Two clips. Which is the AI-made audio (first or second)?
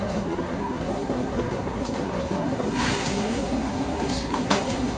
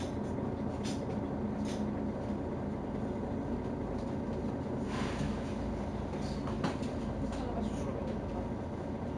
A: first